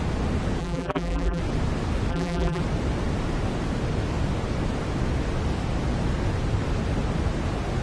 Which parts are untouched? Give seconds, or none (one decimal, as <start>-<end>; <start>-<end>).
0.0-0.6; 1.4-2.1; 2.6-7.8